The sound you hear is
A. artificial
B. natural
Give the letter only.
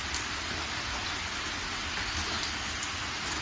B